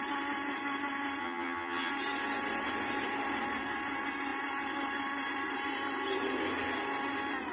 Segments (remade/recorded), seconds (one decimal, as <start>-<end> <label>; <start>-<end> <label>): 0.0-1.2 recorded; 1.2-1.9 remade; 1.9-7.5 recorded